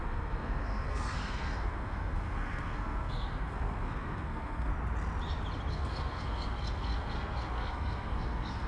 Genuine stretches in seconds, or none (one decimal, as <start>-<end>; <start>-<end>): 4.7-5.7